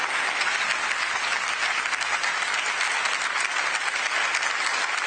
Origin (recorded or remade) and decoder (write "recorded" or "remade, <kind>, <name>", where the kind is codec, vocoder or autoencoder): recorded